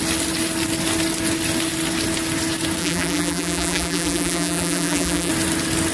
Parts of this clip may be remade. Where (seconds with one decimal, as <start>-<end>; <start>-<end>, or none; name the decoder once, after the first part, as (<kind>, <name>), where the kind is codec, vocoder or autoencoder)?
2.8-5.3 (vocoder, BigVGAN v2)